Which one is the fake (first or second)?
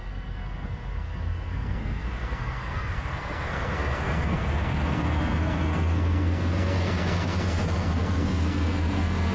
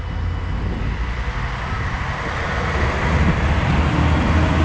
first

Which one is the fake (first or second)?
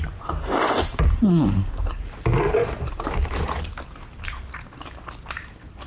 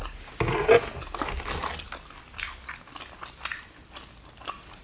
first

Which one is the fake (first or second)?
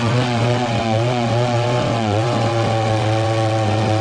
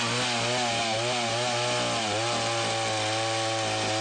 first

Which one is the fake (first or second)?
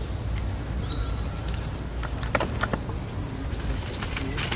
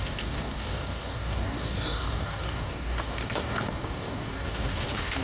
second